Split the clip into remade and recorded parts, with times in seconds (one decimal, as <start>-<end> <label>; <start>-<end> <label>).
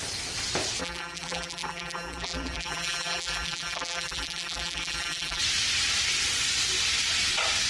0.0-0.8 recorded; 0.8-5.4 remade; 5.4-7.7 recorded